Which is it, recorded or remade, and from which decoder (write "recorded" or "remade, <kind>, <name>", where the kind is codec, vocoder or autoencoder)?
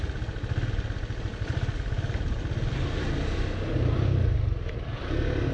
recorded